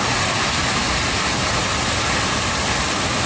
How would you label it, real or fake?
real